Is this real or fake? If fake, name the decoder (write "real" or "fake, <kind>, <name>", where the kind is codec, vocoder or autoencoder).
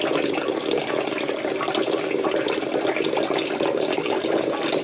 real